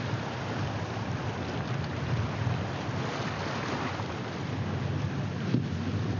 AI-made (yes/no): no